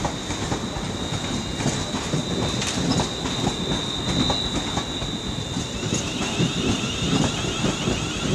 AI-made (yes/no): no